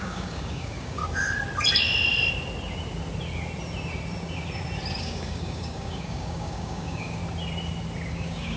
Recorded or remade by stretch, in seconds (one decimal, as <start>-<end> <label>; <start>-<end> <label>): 0.0-1.0 remade; 1.0-5.0 recorded; 5.0-7.2 remade; 7.2-8.1 recorded; 8.1-8.6 remade